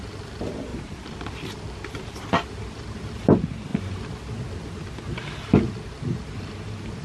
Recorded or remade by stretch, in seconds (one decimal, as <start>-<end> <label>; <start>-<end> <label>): 0.0-0.7 recorded; 0.7-2.3 remade; 2.3-7.0 recorded